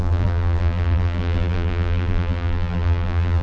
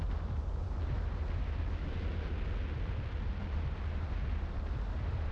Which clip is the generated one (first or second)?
first